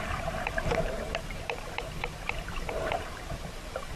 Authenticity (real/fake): fake